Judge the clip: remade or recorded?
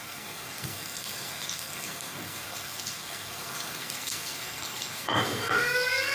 remade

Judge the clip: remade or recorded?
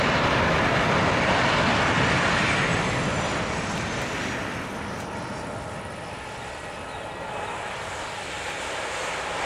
recorded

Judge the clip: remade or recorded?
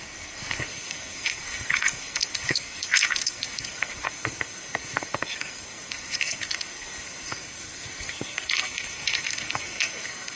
remade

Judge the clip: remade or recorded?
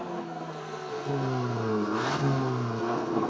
remade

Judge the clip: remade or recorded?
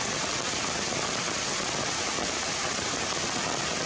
recorded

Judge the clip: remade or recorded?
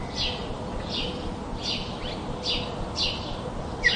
recorded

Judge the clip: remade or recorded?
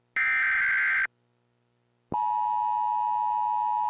recorded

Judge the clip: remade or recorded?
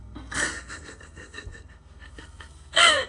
remade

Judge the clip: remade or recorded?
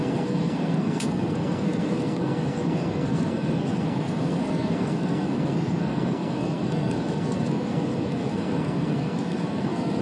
remade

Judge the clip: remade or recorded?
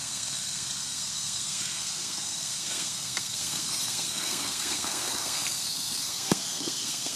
remade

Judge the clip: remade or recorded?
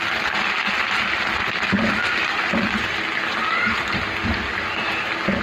recorded